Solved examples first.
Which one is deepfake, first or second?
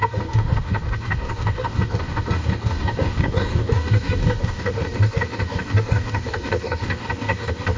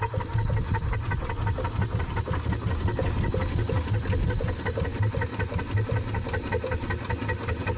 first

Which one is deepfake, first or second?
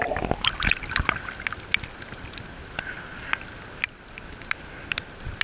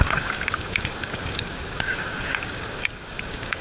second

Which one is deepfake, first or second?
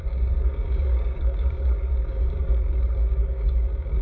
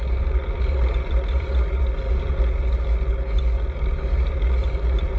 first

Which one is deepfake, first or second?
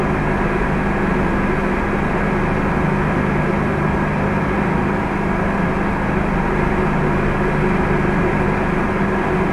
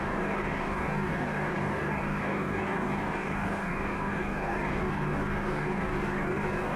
second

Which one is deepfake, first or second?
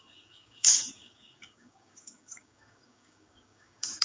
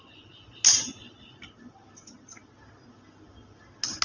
first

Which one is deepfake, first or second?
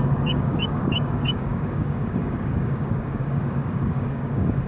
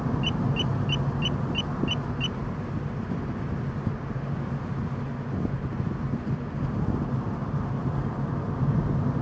first